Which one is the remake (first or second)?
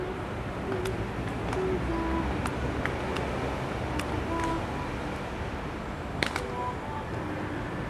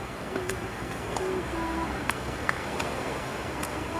second